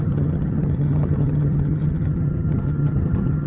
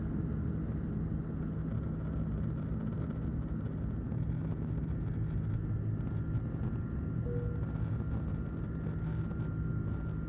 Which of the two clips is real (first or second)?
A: second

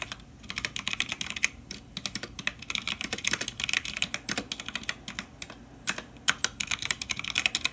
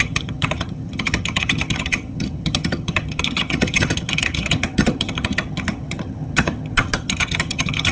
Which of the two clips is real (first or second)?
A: first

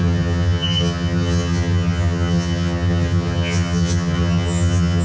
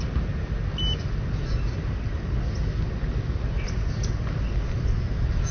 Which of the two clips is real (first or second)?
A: second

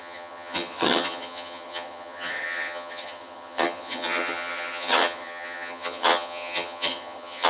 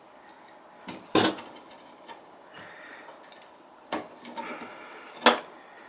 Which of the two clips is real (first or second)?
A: second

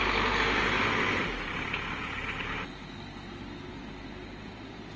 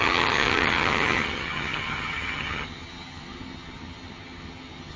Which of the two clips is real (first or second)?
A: first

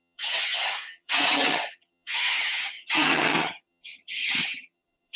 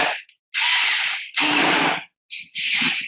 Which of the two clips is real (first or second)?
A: second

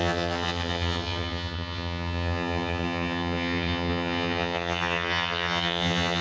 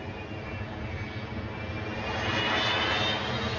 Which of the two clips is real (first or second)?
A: second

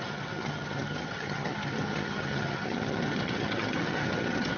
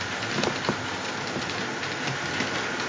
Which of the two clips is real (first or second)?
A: second